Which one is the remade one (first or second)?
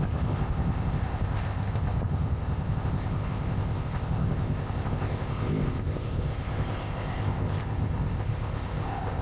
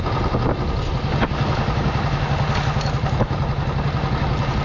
first